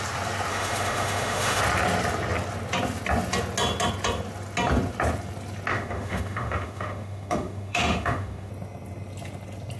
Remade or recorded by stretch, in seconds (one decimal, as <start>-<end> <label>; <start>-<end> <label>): 0.0-0.5 recorded; 0.5-1.6 remade; 1.6-5.7 recorded; 5.7-8.5 remade; 8.5-9.8 recorded